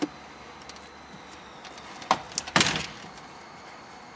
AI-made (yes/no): no